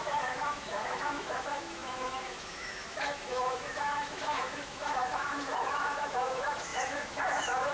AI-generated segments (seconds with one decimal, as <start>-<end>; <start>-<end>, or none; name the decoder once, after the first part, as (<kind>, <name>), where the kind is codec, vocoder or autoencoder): 0.0-7.7 (autoencoder, DAC-VAE)